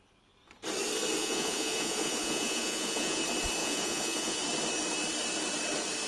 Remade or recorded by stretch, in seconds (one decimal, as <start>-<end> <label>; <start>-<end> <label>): 0.0-1.2 recorded; 1.2-3.2 remade; 3.2-3.6 recorded; 3.6-4.4 remade; 4.4-6.1 recorded